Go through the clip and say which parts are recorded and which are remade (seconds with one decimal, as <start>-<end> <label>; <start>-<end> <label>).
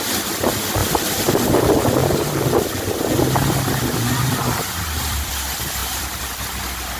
0.0-0.8 recorded; 0.8-1.3 remade; 1.3-2.0 recorded; 2.0-5.3 remade; 5.3-5.8 recorded; 5.8-6.3 remade; 6.3-7.0 recorded